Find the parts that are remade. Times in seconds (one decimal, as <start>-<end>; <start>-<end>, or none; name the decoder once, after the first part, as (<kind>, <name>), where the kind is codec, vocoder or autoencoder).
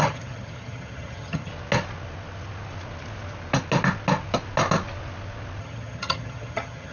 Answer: 0.0-1.5 (vocoder, HiFi-GAN); 5.6-6.9